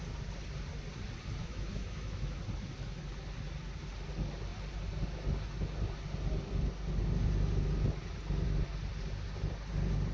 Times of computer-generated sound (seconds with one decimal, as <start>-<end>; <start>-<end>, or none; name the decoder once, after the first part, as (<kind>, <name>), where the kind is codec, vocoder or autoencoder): 1.4-2.4 (autoencoder, DAC-VAE)